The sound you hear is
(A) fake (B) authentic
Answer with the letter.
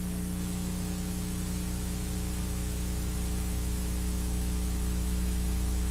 A